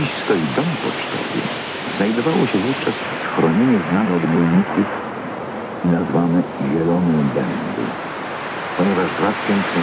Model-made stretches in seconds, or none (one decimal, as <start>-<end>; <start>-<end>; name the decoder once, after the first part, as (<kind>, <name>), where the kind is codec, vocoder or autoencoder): 3.9-6.1 (vocoder, Vocos)